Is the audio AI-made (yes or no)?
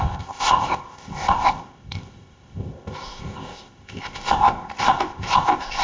yes